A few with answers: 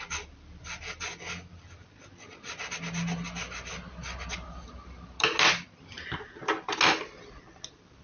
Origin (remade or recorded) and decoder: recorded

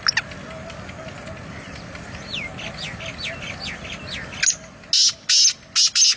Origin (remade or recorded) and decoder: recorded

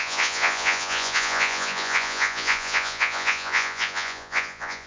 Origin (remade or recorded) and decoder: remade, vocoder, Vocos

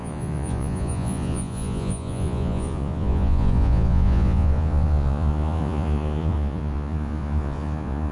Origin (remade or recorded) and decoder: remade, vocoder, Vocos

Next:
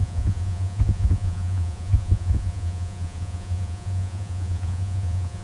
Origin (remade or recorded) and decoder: remade, vocoder, Vocos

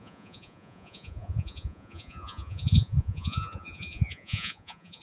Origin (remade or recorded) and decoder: remade, vocoder, Vocos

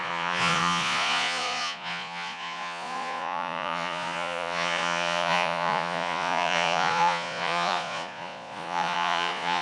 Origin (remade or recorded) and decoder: remade, vocoder, Vocos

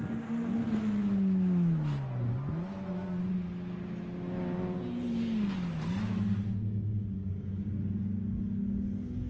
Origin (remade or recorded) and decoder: recorded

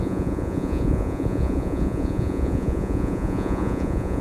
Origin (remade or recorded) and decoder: remade, vocoder, Vocos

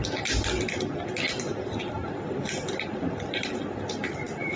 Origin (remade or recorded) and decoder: recorded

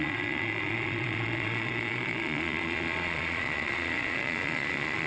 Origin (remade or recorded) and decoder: remade, vocoder, Vocos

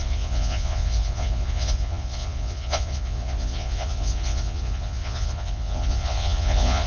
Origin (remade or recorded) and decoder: remade, vocoder, Vocos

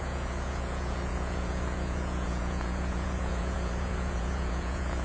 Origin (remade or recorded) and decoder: remade, vocoder, Vocos